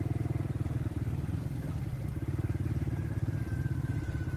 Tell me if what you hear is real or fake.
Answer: real